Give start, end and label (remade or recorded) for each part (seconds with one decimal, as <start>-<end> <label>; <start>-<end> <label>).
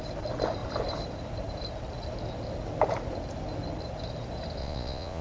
0.0-4.6 recorded; 4.6-5.2 remade